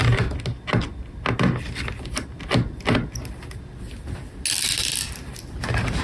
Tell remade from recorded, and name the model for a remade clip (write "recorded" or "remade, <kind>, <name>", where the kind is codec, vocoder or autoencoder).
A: recorded